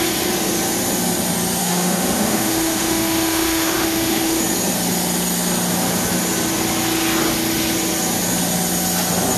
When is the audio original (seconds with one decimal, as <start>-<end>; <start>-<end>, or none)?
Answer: 0.0-1.6; 4.4-9.4